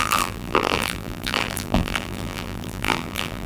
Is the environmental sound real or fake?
fake